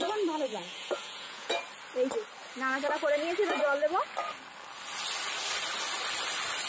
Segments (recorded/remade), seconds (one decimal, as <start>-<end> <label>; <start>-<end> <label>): 0.0-0.5 recorded; 0.5-1.6 remade; 1.6-6.7 recorded